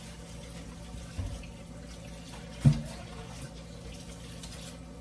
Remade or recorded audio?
recorded